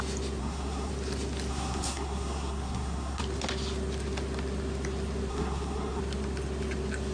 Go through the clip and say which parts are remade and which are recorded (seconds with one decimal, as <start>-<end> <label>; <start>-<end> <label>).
0.0-0.4 recorded; 0.4-0.9 remade; 0.9-1.5 recorded; 1.5-3.2 remade; 3.2-5.3 recorded; 5.3-6.0 remade; 6.0-7.1 recorded